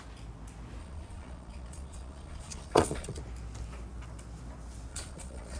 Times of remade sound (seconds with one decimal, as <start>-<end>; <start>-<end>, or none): 0.8-3.2; 4.9-5.6